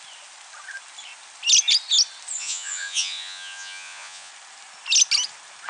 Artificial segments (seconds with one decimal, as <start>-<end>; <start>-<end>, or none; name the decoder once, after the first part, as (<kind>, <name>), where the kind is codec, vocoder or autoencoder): 2.4-4.3 (vocoder, Vocos)